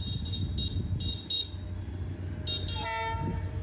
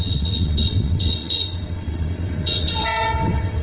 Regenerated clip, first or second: second